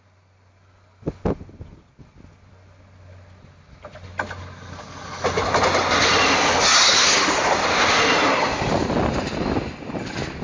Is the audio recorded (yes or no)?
yes